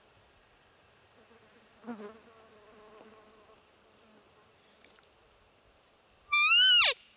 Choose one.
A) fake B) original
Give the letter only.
B